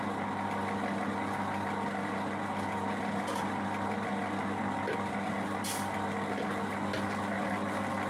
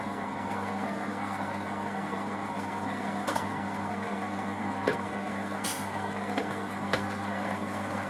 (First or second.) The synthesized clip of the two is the second